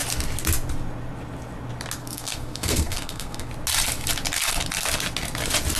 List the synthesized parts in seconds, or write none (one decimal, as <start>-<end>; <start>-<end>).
2.0-3.5